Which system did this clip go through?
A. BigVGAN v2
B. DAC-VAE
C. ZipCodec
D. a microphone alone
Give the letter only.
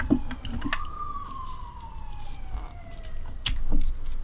D